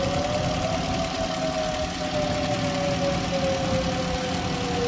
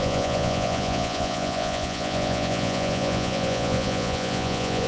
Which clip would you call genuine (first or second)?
first